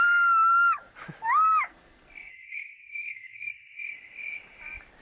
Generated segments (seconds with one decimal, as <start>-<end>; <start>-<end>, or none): 1.7-3.5